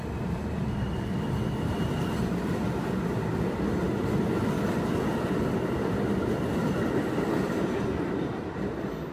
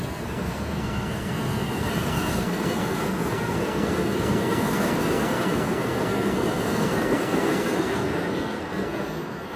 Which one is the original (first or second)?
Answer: first